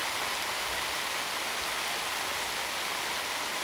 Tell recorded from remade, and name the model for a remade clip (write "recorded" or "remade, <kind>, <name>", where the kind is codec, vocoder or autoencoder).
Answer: recorded